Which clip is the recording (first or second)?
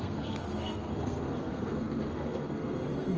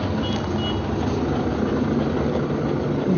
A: second